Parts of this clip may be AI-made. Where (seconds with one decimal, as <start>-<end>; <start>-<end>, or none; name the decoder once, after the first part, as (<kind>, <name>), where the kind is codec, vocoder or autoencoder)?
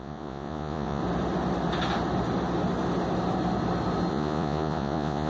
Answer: 0.0-1.0 (vocoder, Vocos); 4.1-5.3